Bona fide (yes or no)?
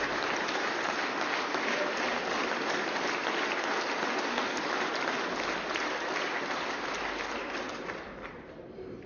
yes